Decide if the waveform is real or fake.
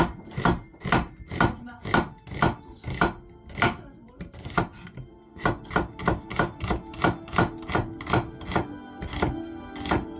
real